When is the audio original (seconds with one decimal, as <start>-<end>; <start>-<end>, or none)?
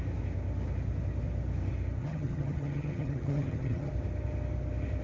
0.0-2.0; 3.9-5.0